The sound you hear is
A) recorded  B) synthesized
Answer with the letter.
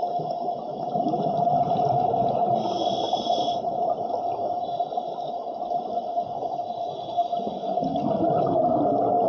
A